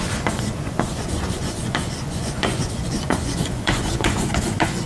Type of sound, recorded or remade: remade